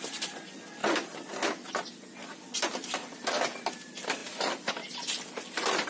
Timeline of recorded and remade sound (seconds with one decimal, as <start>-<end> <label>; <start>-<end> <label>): 0.0-4.2 recorded; 4.2-4.7 remade; 4.7-5.9 recorded